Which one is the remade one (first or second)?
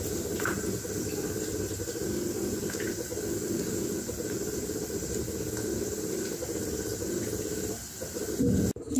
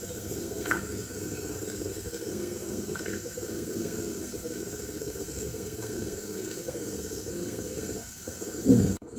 second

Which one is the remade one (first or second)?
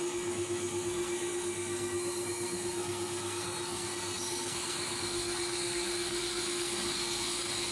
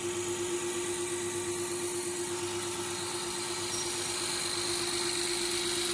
first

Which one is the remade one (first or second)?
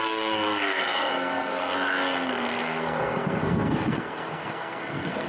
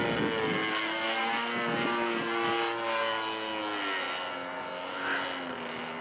first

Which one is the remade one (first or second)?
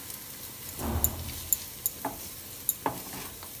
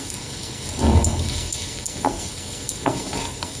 second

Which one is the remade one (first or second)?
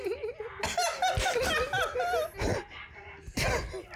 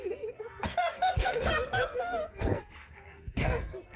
second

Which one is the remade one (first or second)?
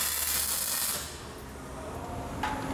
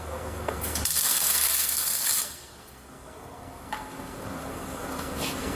second